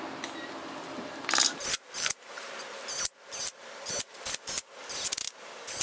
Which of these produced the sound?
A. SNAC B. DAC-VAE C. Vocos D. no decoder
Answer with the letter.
D